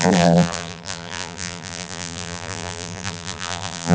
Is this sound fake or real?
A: fake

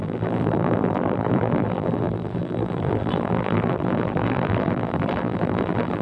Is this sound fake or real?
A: fake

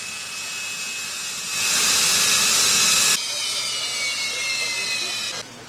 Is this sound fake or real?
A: real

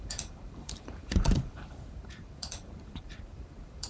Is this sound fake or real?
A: fake